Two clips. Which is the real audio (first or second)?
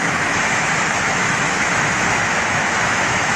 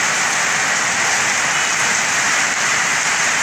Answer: second